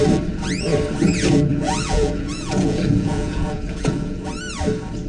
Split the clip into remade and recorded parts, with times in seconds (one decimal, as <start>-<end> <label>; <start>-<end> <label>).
0.0-1.5 recorded; 1.5-4.3 remade; 4.3-5.1 recorded

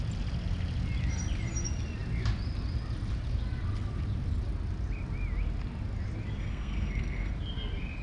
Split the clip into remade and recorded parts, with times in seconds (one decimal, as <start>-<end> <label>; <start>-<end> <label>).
0.0-6.4 recorded; 6.4-7.3 remade; 7.3-8.0 recorded